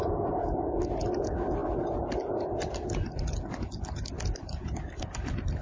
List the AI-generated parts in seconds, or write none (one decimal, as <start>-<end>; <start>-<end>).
none